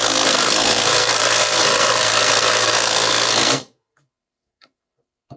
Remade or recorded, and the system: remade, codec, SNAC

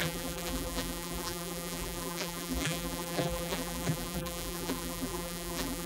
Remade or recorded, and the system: remade, vocoder, BigVGAN v2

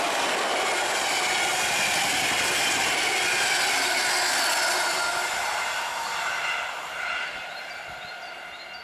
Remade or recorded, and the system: recorded